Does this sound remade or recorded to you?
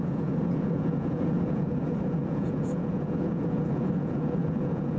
remade